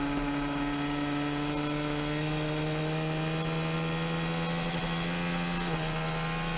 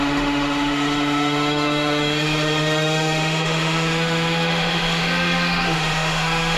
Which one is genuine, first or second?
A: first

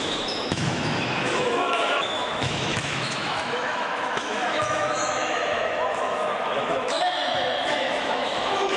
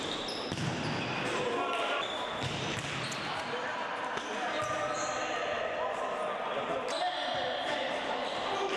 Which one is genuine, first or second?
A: second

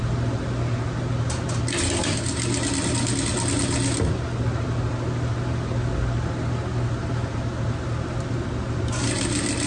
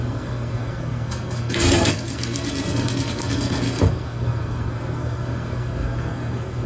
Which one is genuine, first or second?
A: first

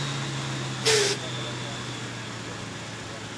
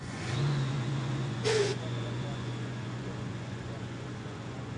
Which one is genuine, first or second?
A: first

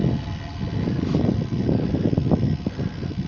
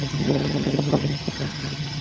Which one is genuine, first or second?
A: first